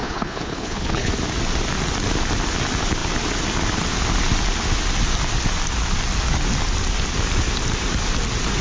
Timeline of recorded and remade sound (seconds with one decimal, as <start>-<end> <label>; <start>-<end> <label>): 0.0-1.1 remade; 1.1-8.6 recorded